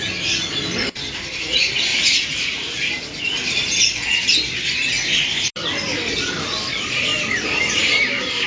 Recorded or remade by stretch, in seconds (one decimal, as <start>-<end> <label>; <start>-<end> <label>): 0.0-1.9 recorded; 1.9-2.7 remade; 2.7-8.5 recorded